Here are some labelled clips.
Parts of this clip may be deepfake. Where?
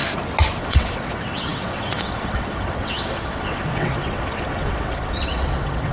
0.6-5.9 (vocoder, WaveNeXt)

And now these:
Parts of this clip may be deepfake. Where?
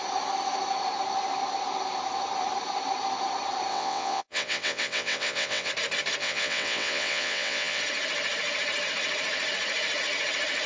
3.7-5.7 (vocoder, WaveNeXt); 6.2-7.8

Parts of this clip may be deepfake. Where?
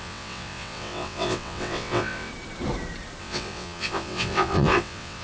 0.0-2.3 (vocoder, WaveNeXt); 3.2-5.2